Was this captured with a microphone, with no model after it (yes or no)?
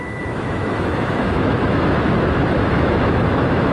no